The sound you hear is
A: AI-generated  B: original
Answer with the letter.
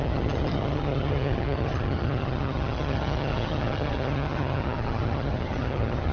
A